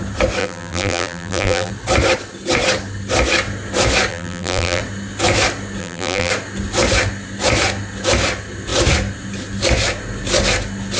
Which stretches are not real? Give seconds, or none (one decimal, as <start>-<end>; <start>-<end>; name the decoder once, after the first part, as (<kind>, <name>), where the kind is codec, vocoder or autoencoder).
0.4-1.7 (vocoder, BigVGAN v2); 4.1-4.8; 5.8-6.3